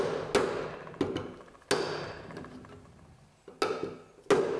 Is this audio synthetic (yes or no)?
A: no